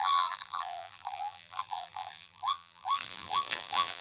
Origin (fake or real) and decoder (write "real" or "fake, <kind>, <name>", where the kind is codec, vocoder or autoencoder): fake, vocoder, BigVGAN v2